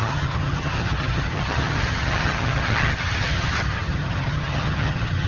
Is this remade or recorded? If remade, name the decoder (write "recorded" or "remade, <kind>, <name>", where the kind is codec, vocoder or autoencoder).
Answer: remade, vocoder, HiFi-GAN